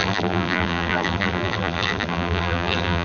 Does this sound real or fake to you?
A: fake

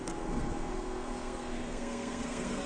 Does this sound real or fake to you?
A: fake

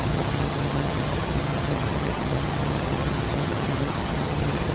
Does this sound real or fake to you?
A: fake